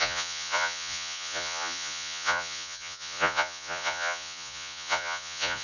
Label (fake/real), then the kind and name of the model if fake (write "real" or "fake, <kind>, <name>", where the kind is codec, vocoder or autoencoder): fake, vocoder, Vocos